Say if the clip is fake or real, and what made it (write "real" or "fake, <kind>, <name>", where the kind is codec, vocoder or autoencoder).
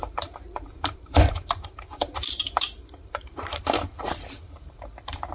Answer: fake, vocoder, BigVGAN v2